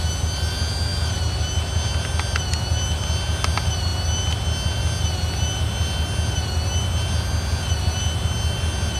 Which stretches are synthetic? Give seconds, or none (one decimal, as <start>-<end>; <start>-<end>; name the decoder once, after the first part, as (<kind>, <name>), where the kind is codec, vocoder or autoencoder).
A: none